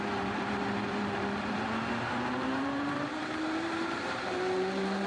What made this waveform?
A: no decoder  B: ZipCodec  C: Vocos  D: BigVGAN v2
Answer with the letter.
D